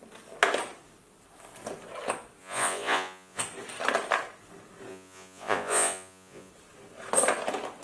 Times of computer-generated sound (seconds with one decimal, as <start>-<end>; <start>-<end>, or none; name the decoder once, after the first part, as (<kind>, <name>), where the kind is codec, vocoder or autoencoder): 2.4-3.4 (vocoder, Vocos); 4.9-6.5